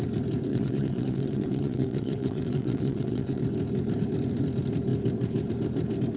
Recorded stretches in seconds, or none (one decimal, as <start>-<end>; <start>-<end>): 0.0-0.5; 3.4-6.2